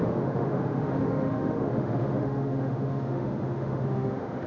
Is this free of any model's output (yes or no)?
no